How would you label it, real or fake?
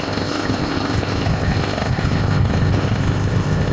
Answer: fake